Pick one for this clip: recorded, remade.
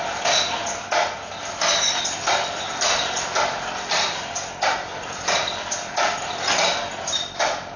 recorded